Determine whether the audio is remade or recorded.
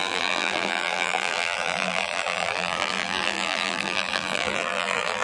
remade